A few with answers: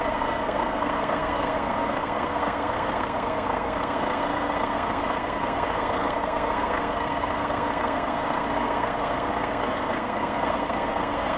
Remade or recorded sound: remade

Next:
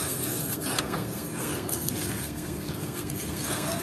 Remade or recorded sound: remade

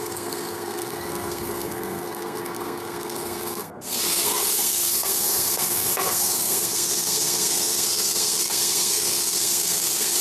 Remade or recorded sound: remade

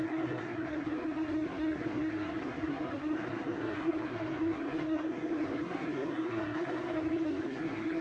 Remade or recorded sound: remade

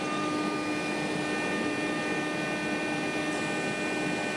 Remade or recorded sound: recorded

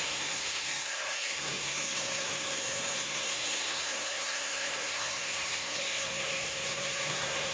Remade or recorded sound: remade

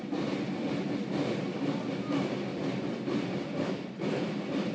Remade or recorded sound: recorded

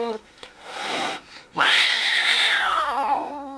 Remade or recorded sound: remade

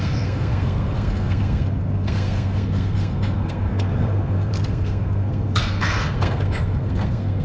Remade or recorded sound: remade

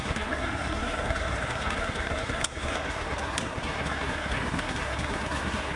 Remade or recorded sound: remade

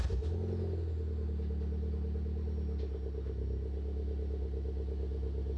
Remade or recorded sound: recorded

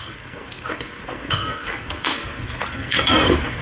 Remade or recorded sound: remade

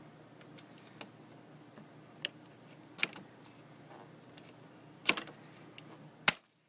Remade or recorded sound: recorded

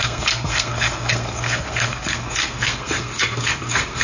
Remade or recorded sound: remade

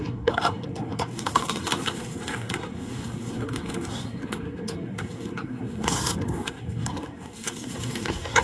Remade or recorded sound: remade